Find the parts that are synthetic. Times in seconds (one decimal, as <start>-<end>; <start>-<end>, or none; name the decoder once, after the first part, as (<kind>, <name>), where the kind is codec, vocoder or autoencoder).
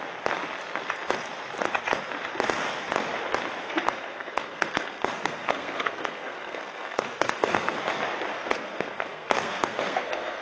3.6-7.8 (codec, SNAC); 8.3-10.4